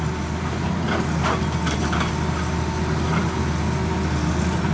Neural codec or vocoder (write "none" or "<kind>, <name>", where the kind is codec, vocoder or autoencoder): none